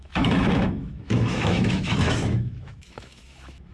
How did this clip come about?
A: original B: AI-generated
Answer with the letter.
B